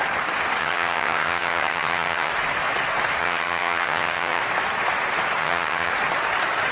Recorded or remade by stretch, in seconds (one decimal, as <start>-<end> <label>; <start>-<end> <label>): 0.0-0.6 recorded; 0.6-2.3 remade; 2.3-3.2 recorded; 3.2-4.4 remade; 4.4-5.4 recorded; 5.4-5.9 remade; 5.9-6.7 recorded